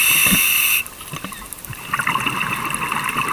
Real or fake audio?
real